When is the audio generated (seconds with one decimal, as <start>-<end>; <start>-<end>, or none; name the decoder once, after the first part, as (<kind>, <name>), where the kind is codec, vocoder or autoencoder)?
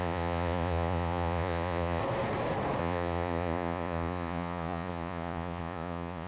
0.0-2.0 (vocoder, Vocos); 2.8-6.3